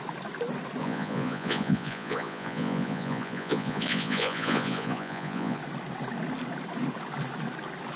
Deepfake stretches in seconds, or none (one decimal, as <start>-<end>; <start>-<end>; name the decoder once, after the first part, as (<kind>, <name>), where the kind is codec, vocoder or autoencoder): 0.8-5.6 (vocoder, Vocos)